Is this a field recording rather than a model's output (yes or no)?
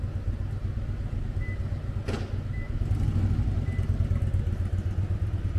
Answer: yes